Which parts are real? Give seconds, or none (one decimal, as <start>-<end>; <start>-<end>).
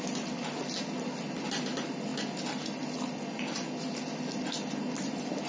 0.0-5.5